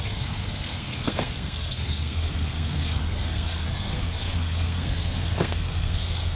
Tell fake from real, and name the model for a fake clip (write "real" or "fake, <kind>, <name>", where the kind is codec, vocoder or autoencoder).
fake, codec, SNAC